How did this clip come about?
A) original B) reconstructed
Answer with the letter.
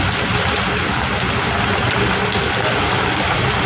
A